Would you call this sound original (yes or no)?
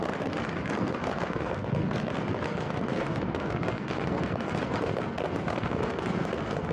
no